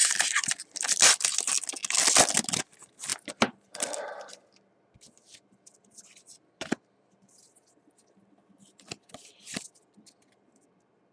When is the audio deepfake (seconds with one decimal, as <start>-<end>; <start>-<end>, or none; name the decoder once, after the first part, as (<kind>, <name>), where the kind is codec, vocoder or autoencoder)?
0.0-1.5 (vocoder, BigVGAN v2); 3.1-7.4